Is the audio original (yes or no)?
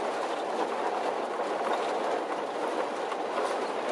yes